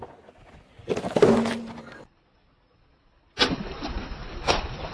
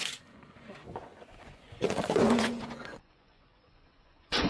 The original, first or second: first